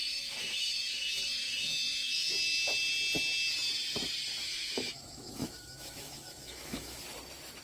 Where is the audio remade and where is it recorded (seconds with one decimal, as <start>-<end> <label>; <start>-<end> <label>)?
0.0-2.3 remade; 2.3-4.4 recorded; 4.4-7.0 remade; 7.0-7.6 recorded